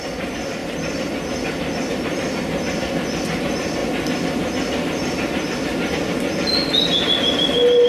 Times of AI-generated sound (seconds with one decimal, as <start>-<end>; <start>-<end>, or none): none